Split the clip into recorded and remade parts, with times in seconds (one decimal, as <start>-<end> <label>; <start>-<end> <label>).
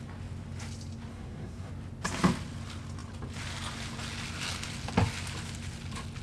0.0-1.1 recorded; 1.1-1.7 remade; 1.7-6.2 recorded